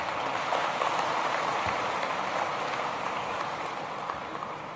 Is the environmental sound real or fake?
fake